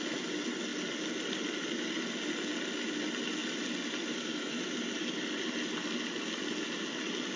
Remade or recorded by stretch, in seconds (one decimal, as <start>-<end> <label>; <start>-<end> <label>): 0.0-7.4 recorded